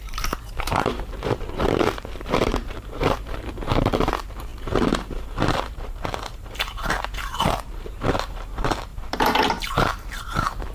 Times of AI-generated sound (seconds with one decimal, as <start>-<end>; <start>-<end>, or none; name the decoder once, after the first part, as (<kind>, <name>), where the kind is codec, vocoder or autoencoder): 0.0-10.7 (vocoder, BigVGAN v2)